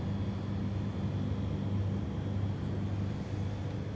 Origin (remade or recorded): recorded